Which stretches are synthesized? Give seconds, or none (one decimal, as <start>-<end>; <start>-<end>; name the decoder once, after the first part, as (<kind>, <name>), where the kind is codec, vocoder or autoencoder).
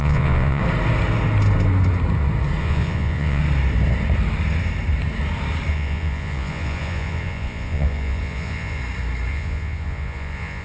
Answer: 0.0-0.6 (vocoder, Vocos); 2.6-3.4; 5.7-8.8; 9.3-10.6